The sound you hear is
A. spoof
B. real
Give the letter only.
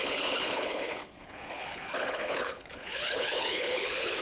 A